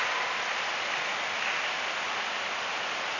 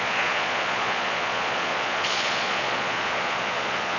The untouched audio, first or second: first